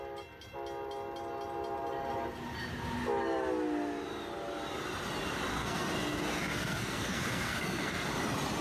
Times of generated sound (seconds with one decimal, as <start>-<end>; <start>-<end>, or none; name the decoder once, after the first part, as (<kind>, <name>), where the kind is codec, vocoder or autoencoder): 5.5-8.1 (codec, SNAC)